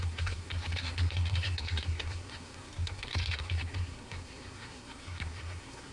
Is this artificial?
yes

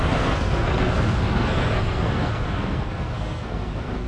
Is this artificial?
yes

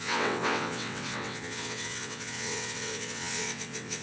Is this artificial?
yes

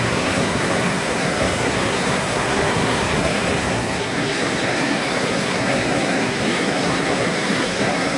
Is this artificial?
yes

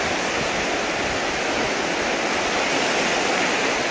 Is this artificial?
no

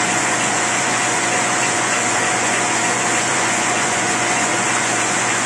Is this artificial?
yes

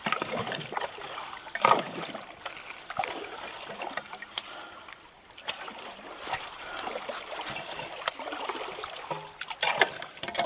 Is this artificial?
no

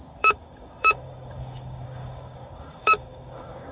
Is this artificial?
yes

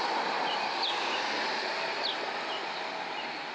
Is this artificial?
no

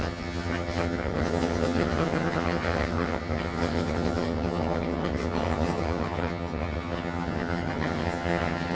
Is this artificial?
yes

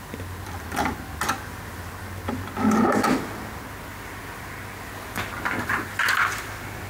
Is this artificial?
no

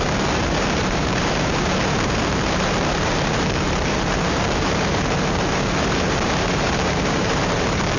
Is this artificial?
yes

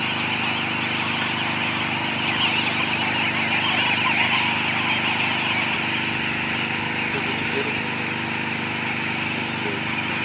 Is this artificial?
no